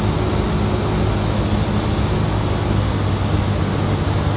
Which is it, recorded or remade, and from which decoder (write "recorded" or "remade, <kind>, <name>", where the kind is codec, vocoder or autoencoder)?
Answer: recorded